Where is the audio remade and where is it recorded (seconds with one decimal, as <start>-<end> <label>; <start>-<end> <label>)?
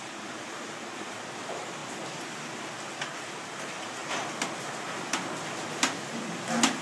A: 0.0-1.8 remade; 1.8-3.6 recorded; 3.6-4.0 remade; 4.0-6.8 recorded